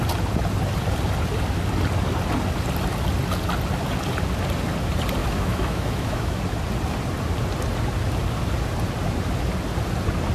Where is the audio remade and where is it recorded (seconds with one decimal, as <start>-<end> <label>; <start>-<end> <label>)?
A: 0.0-5.2 recorded; 5.2-6.4 remade; 6.4-10.3 recorded

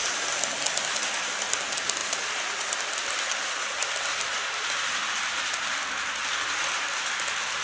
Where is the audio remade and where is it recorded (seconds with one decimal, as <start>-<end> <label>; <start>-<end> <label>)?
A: 0.0-7.6 recorded

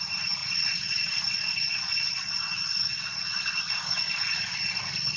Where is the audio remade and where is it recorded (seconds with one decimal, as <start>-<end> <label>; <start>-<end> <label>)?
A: 0.0-0.4 recorded; 0.4-3.5 remade; 3.5-5.2 recorded

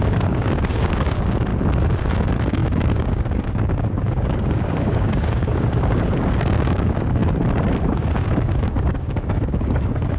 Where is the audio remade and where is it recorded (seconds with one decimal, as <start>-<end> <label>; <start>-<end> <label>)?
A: 0.0-1.5 remade; 1.5-2.0 recorded; 2.0-7.2 remade; 7.2-7.9 recorded; 7.9-10.2 remade

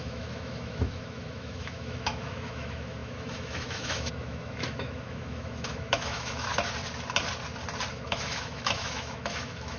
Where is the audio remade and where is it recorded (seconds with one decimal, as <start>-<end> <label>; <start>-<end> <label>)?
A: 0.0-6.5 remade; 6.5-7.9 recorded; 7.9-9.8 remade